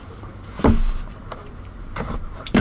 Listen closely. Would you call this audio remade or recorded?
remade